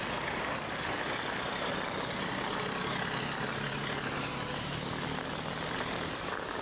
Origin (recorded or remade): recorded